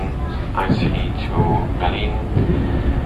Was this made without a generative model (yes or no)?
yes